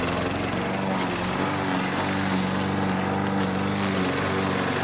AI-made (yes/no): no